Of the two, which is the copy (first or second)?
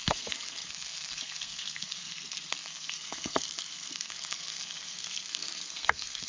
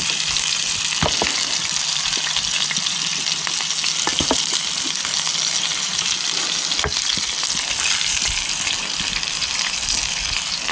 first